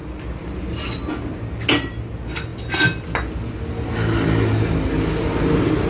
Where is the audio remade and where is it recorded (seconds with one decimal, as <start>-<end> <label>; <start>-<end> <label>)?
0.0-5.9 recorded